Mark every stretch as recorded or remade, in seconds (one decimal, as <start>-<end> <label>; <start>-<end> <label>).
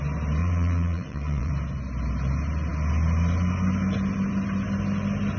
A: 0.0-0.4 recorded; 0.4-1.5 remade; 1.5-5.4 recorded